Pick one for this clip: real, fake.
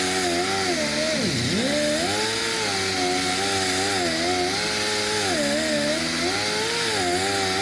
real